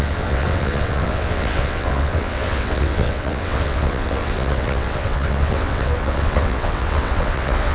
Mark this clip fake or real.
fake